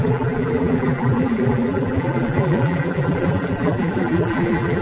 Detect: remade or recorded remade